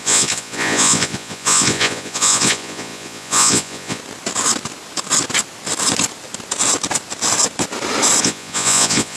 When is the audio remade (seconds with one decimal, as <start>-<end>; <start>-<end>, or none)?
0.0-4.0; 8.2-9.2